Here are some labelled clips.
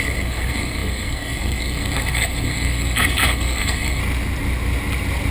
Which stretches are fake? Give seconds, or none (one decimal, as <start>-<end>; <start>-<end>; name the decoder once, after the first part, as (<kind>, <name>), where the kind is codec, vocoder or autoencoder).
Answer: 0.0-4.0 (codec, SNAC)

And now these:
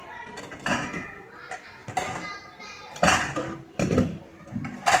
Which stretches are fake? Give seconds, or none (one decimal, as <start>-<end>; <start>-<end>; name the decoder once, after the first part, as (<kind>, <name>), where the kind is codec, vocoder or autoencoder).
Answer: 0.7-1.3 (vocoder, Vocos)

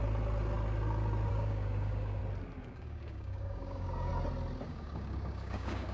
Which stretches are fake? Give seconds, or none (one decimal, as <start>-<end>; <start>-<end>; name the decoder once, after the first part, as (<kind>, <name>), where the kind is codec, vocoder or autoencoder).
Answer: 1.3-2.2 (codec, DAC); 2.7-4.1; 4.7-5.9

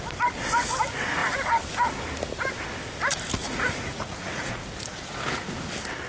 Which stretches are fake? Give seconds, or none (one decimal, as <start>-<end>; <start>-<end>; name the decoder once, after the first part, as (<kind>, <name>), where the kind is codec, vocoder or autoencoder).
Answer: 3.4-5.6 (vocoder, Vocos)

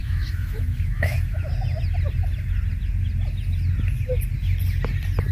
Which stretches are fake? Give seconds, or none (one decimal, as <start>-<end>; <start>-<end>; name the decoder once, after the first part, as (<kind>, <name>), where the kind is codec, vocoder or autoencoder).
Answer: 0.0-1.5 (autoencoder, DAC-VAE)

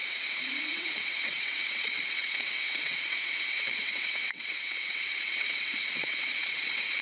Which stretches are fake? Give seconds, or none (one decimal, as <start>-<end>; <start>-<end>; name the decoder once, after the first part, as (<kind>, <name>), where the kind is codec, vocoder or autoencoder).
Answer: 0.0-7.0 (vocoder, WaveNeXt)